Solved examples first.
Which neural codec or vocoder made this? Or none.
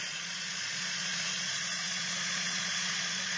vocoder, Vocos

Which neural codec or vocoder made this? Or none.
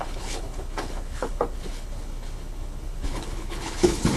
codec, HILCodec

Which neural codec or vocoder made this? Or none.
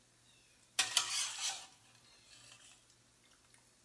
none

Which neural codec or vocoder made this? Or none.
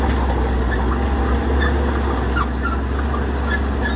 none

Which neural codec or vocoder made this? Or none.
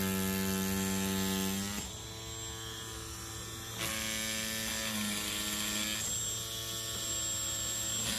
none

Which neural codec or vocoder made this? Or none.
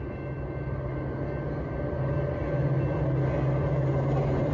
none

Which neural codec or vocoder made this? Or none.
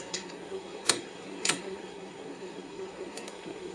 codec, SNAC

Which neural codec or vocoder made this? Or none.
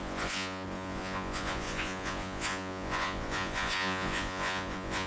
vocoder, Vocos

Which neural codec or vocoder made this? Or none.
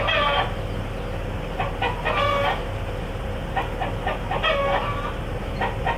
none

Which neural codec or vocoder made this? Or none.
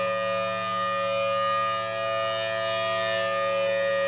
none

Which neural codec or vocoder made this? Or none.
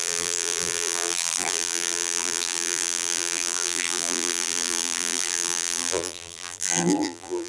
vocoder, BigVGAN v2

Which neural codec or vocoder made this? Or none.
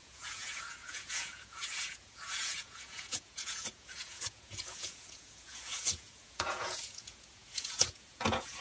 vocoder, Vocos